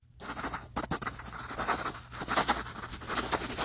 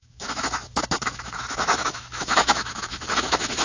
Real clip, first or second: first